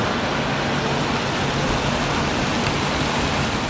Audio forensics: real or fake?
real